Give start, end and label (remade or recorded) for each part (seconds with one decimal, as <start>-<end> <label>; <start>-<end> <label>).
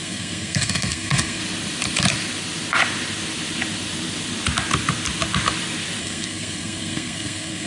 0.0-1.4 remade; 1.4-6.0 recorded; 6.0-7.7 remade